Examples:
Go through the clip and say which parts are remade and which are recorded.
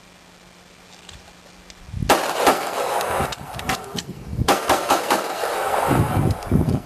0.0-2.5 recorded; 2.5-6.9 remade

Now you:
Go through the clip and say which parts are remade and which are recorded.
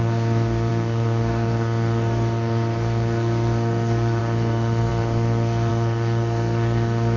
0.0-7.2 remade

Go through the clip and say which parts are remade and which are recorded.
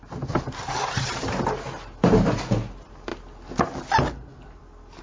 0.0-5.0 recorded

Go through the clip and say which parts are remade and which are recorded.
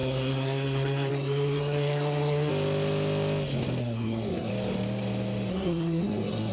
0.0-2.5 remade; 2.5-3.8 recorded; 3.8-4.5 remade; 4.5-5.5 recorded; 5.5-6.5 remade